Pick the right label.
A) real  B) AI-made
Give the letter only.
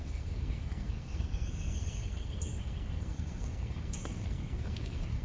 B